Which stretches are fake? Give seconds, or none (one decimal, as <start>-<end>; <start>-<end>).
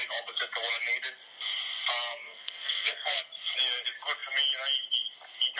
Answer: 2.1-3.2